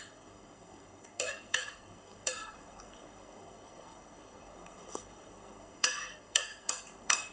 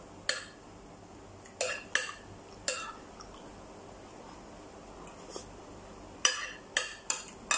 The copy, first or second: first